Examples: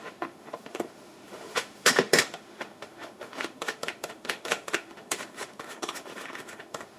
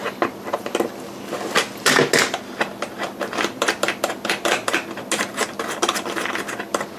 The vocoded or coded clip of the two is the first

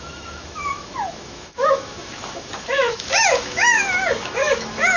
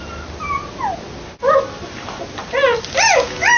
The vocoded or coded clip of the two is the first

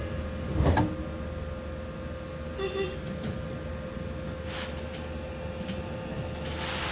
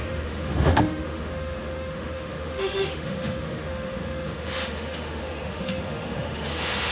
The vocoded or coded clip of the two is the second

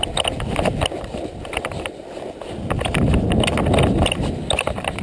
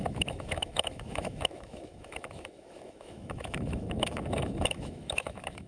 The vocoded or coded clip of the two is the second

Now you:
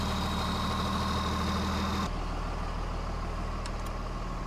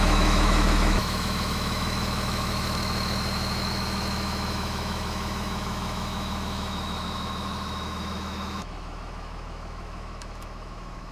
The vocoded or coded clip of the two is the second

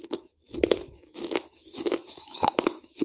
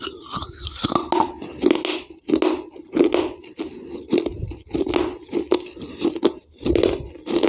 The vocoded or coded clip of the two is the first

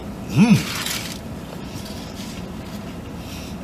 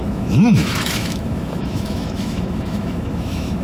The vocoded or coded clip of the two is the second